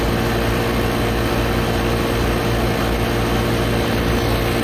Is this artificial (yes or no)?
no